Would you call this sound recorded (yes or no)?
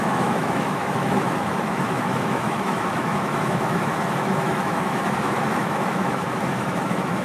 no